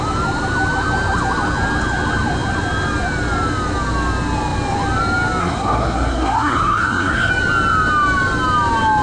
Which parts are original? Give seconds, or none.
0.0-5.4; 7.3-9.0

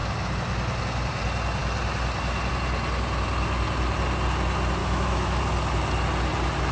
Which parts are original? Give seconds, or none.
0.0-4.8; 5.4-6.7

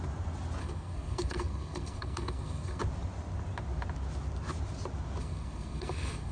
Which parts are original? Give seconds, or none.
0.0-0.6; 2.8-5.2